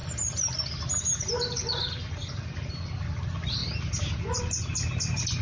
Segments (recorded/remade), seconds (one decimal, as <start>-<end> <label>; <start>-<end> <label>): 0.0-5.4 recorded